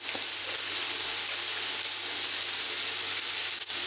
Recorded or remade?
recorded